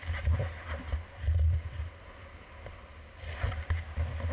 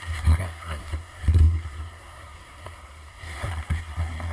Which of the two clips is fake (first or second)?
second